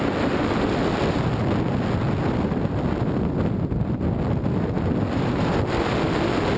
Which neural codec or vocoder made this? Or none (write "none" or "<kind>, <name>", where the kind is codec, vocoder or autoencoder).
none